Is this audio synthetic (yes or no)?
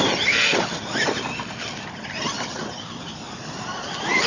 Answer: no